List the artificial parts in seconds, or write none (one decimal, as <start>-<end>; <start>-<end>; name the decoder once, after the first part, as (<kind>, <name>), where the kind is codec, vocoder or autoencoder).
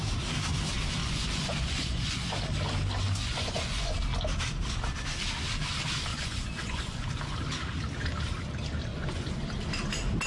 1.0-2.3 (vocoder, Vocos); 3.2-3.9; 6.1-7.2; 8.9-9.5